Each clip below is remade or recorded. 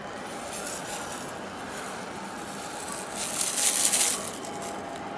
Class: recorded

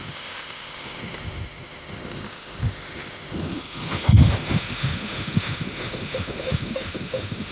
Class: remade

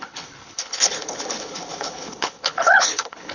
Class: remade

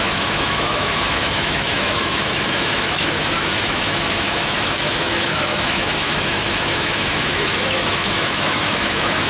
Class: remade